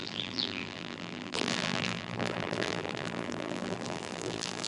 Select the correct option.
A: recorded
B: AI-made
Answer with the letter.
B